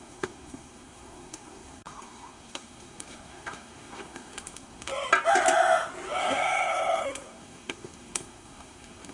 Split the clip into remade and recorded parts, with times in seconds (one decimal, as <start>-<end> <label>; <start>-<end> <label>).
0.0-4.9 remade; 4.9-6.2 recorded; 6.2-9.1 remade